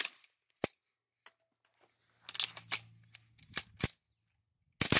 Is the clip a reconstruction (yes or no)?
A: no